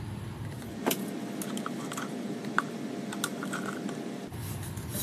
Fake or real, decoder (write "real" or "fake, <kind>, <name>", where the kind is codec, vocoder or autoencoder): real